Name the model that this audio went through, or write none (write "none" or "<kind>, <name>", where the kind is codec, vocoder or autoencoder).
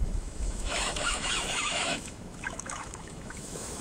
autoencoder, DAC-VAE